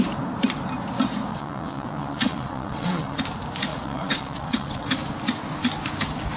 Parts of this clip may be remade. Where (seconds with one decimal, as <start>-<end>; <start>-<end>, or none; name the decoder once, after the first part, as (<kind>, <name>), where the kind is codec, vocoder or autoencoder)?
1.3-3.2 (vocoder, WaveNeXt); 3.7-4.9